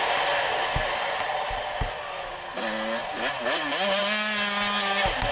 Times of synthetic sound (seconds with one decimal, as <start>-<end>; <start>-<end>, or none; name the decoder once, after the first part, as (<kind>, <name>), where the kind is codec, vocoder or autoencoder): none